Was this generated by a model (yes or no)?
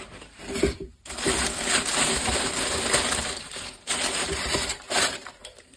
yes